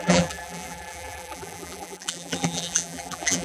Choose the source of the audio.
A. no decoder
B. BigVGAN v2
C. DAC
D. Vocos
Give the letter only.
B